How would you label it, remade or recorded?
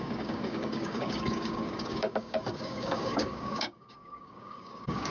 remade